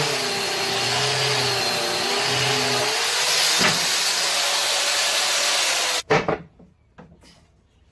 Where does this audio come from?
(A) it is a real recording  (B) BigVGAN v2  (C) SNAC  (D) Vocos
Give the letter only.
A